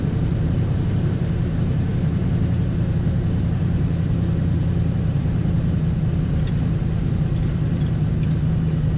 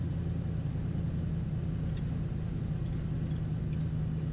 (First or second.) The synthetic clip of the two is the first